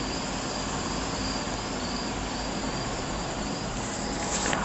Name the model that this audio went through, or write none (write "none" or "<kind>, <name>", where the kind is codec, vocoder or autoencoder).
none